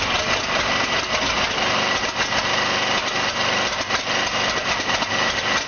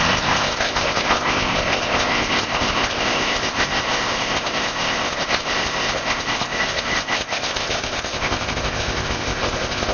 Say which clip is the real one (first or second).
first